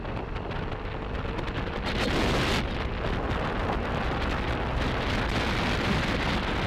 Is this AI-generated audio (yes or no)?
no